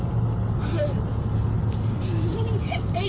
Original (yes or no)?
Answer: yes